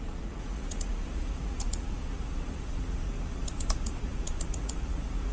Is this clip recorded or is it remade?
remade